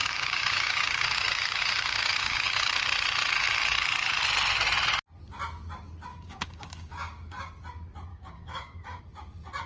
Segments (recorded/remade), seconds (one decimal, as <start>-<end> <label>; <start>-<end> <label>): 0.0-2.8 remade; 2.8-6.1 recorded; 6.1-7.5 remade; 7.5-8.1 recorded; 8.1-9.0 remade; 9.0-9.7 recorded